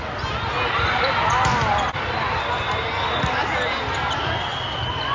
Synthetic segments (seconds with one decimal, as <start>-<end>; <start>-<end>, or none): none